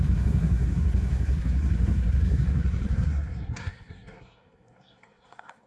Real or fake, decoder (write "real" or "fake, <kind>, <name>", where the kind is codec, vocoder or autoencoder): fake, codec, SNAC